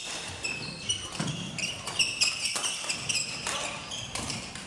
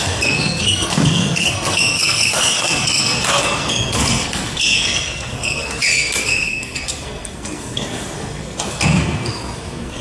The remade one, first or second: second